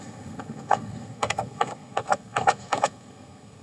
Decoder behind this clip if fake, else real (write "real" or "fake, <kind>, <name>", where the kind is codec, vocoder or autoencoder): fake, codec, SNAC